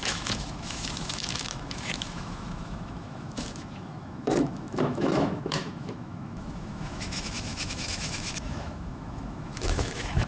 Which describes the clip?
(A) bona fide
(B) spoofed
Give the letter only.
B